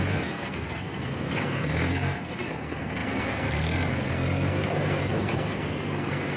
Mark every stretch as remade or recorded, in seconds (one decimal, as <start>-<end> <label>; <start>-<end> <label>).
0.0-6.4 remade